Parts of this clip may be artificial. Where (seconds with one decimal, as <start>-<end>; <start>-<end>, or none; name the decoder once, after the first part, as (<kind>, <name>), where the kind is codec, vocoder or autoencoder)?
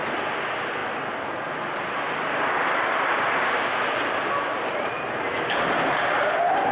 none